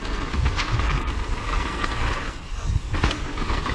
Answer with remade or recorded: remade